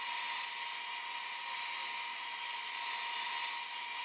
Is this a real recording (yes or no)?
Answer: yes